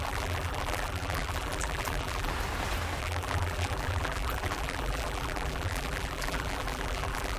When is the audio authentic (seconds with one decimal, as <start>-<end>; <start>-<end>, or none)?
2.3-3.0